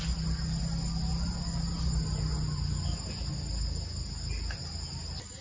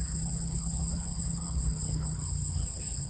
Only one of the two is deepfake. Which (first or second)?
second